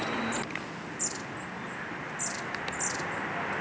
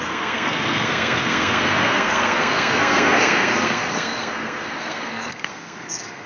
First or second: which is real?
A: first